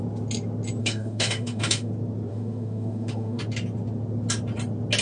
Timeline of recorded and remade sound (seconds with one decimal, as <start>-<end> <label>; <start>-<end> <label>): 0.0-0.8 recorded; 0.8-1.9 remade; 1.9-2.3 recorded; 2.3-3.4 remade; 3.4-5.0 recorded

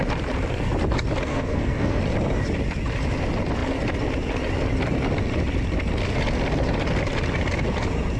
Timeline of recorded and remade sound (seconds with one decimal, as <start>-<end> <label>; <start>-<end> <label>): 0.0-1.3 recorded; 1.3-2.0 remade; 2.0-8.2 recorded

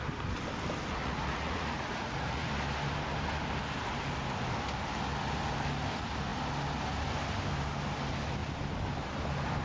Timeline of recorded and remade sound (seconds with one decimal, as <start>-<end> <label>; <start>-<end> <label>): 0.0-1.0 recorded; 1.0-2.5 remade; 2.5-9.6 recorded

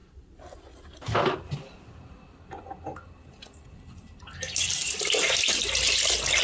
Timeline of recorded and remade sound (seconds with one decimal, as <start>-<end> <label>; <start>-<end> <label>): 0.0-6.4 recorded

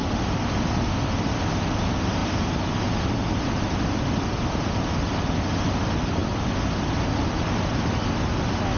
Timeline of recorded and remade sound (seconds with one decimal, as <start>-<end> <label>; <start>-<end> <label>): 0.0-8.8 recorded